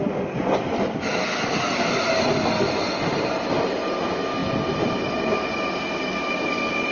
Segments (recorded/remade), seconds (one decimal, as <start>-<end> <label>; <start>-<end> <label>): 0.0-6.9 recorded

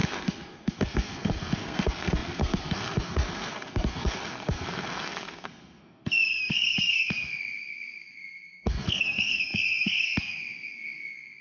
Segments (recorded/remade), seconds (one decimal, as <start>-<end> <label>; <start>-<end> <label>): 0.0-11.4 remade

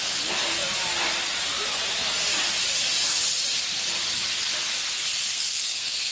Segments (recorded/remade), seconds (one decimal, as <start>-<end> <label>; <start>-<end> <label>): 0.0-5.3 recorded; 5.3-6.1 remade

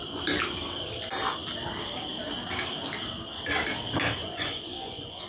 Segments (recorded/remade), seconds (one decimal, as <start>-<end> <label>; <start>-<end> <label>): 0.0-4.2 recorded; 4.2-5.3 remade

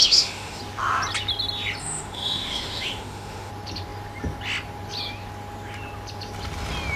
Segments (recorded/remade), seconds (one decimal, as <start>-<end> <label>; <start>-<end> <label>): 0.0-0.6 remade; 0.6-1.8 recorded; 1.8-3.5 remade; 3.5-7.0 recorded

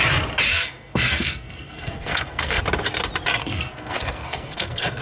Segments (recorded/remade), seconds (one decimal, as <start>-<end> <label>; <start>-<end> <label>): 0.0-0.5 recorded; 0.5-2.6 remade; 2.6-3.4 recorded; 3.4-5.0 remade

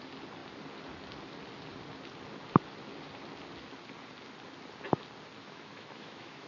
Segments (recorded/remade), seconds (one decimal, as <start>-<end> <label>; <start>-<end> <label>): 0.0-5.4 recorded; 5.4-6.5 remade

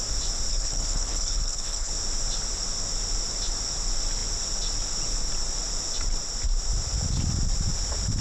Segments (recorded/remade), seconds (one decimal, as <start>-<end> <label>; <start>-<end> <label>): 0.0-0.5 recorded; 0.5-1.9 remade; 1.9-8.2 recorded